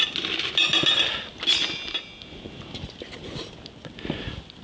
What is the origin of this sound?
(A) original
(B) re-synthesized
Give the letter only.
A